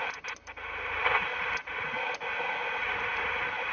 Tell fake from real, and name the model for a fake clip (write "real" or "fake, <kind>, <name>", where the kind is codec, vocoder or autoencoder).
fake, vocoder, BigVGAN v2